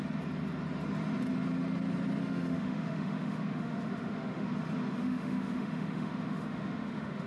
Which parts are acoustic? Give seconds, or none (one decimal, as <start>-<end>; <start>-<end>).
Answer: 0.0-2.2; 4.5-5.0